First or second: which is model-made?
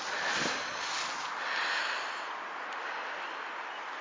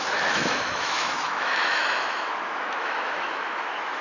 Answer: second